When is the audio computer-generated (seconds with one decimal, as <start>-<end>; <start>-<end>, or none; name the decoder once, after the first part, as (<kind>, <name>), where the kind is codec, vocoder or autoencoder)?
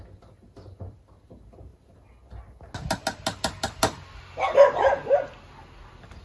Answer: none